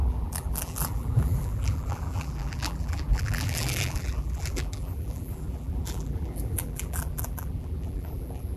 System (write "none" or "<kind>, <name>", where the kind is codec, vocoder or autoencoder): vocoder, BigVGAN v2